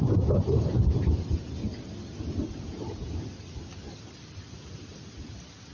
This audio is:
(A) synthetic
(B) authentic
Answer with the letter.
B